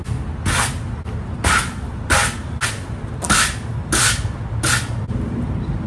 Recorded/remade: recorded